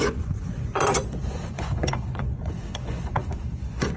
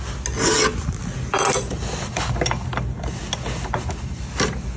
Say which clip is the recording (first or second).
second